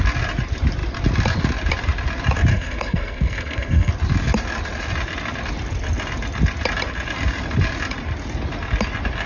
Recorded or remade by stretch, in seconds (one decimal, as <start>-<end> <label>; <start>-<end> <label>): 0.0-2.5 recorded; 2.5-3.9 remade; 3.9-9.3 recorded